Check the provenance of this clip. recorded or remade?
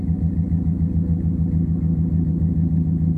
recorded